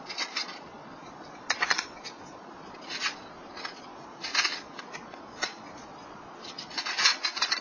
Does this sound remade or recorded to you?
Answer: remade